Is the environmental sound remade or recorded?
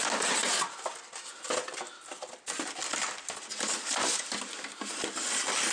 recorded